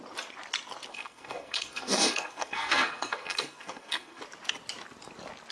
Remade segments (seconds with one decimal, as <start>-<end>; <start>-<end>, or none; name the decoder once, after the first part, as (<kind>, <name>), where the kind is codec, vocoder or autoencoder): 0.9-4.2 (codec, SNAC)